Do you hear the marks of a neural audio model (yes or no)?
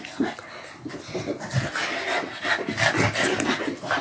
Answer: no